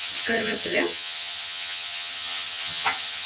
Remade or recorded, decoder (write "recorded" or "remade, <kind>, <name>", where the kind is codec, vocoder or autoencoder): remade, vocoder, HiFi-GAN